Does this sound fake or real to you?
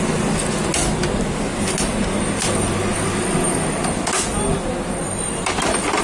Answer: real